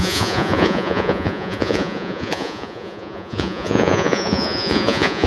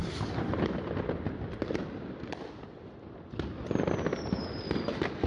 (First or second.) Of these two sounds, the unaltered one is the second